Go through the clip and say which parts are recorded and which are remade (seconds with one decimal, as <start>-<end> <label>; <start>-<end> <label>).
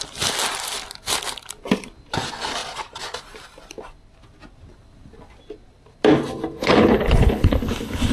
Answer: 0.0-6.6 recorded; 6.6-8.1 remade